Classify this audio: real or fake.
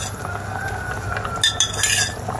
real